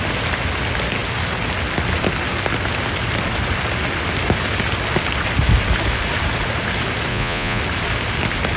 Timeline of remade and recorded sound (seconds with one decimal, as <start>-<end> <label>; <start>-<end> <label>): 0.0-7.1 recorded; 7.1-7.6 remade; 7.6-8.6 recorded